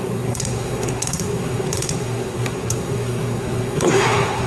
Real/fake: fake